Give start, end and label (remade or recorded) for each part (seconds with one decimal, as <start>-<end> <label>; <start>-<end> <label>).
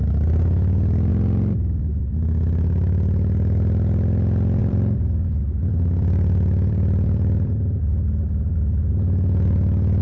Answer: 0.0-1.1 recorded; 1.1-2.0 remade; 2.0-4.6 recorded; 4.6-8.9 remade; 8.9-10.0 recorded